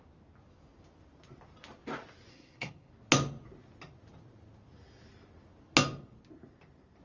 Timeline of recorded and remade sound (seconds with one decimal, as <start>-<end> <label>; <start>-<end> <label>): 0.0-2.3 recorded; 2.3-2.9 remade; 2.9-7.0 recorded